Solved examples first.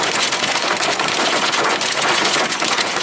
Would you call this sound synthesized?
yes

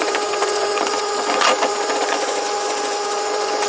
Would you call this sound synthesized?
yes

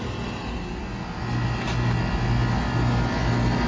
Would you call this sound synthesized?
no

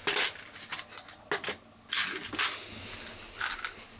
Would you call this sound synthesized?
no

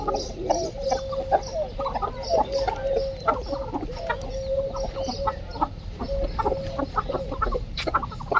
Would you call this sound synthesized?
no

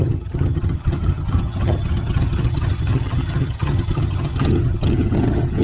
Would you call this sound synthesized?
yes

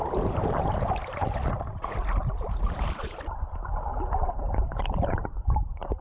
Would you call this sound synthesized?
yes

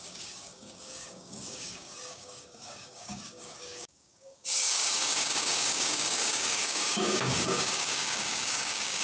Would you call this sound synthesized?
yes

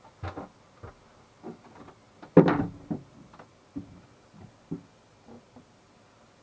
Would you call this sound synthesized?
no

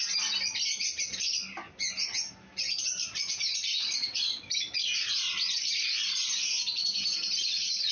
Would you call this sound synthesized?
no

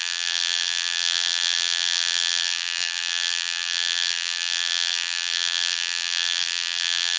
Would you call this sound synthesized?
yes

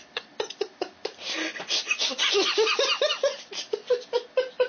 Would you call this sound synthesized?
no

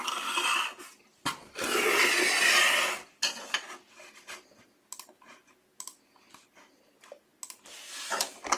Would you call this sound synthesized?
no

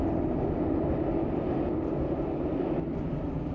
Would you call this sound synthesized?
no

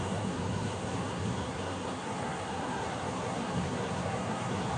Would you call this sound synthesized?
yes